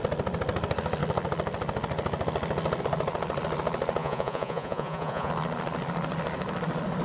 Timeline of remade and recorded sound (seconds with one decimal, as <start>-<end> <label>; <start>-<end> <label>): 0.0-4.0 recorded; 4.0-5.3 remade; 5.3-7.0 recorded